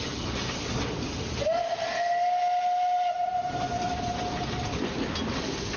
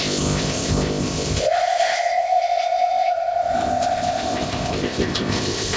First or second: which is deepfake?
second